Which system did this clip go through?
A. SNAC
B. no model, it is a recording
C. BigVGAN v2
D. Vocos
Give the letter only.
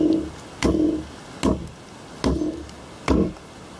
B